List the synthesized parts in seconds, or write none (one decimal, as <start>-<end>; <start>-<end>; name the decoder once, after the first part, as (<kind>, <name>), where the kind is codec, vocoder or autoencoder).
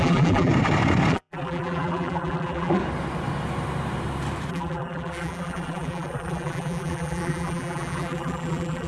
0.0-0.5 (vocoder, BigVGAN v2); 1.1-2.8; 4.5-8.9